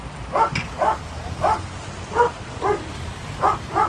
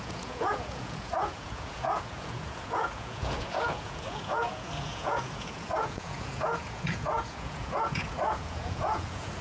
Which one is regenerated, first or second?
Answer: second